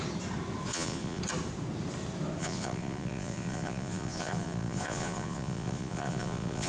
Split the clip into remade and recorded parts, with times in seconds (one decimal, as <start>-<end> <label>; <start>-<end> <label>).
0.0-0.7 recorded; 0.7-1.2 remade; 1.2-2.4 recorded; 2.4-6.7 remade